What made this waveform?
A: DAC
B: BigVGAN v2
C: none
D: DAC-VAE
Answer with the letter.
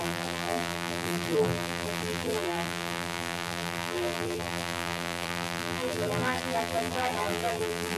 B